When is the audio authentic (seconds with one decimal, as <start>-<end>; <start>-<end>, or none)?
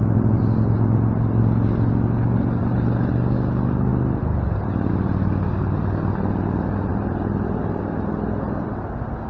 0.0-2.6; 3.1-6.9; 7.8-9.3